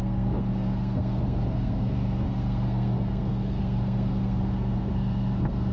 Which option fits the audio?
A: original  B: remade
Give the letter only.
B